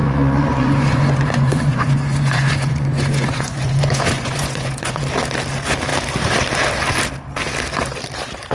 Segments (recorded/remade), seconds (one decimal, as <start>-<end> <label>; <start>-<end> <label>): 0.0-5.0 remade; 5.0-8.5 recorded